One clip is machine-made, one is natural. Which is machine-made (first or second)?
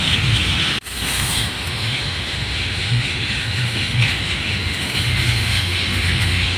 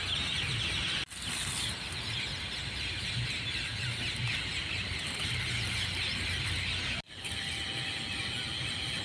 first